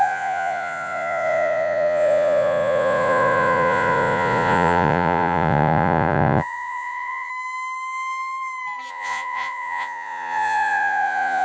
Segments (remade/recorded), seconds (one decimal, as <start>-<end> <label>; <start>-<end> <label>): 0.0-7.3 remade; 7.3-8.9 recorded; 8.9-11.4 remade